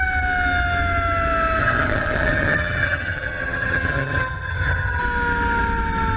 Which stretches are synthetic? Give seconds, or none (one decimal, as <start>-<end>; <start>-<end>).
1.6-5.0